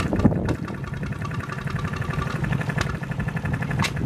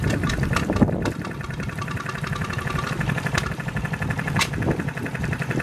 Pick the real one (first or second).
first